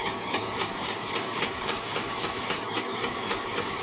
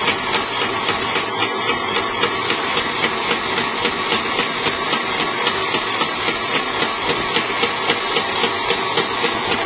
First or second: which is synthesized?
first